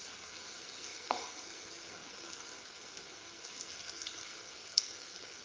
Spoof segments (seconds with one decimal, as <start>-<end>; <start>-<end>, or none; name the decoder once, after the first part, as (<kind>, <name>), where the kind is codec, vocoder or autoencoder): 0.0-5.4 (codec, SNAC)